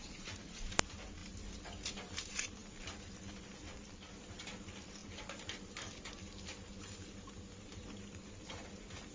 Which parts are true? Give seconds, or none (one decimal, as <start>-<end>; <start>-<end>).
0.7-9.1